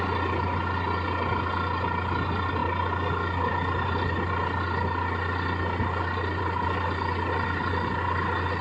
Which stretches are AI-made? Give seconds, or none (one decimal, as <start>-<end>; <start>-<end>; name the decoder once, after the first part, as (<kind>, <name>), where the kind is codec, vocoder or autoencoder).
none